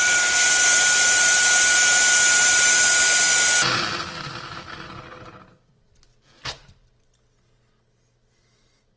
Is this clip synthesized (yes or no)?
no